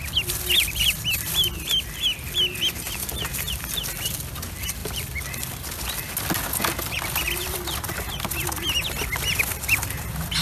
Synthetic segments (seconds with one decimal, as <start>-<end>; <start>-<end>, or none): none